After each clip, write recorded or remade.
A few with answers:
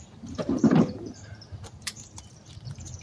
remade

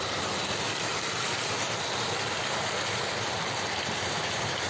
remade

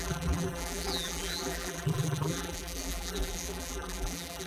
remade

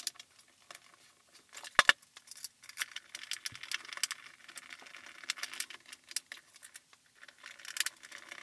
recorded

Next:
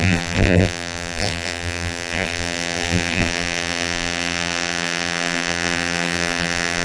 remade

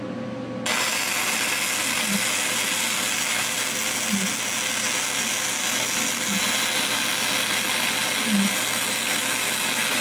recorded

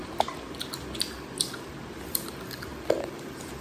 remade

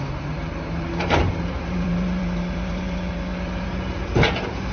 remade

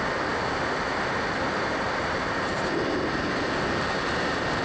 remade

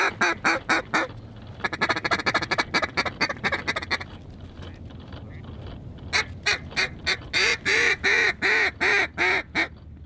recorded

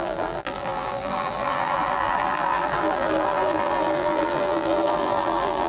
remade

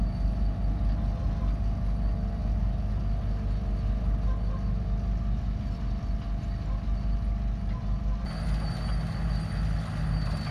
recorded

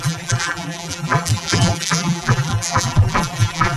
remade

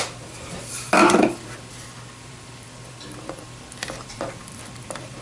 remade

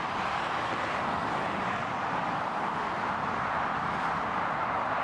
recorded